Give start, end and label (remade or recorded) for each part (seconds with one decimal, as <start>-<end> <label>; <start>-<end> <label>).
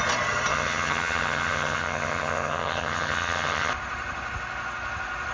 0.0-0.5 recorded; 0.5-3.7 remade; 3.7-5.3 recorded